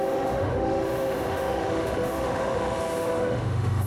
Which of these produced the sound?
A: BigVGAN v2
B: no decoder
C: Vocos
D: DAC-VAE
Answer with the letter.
D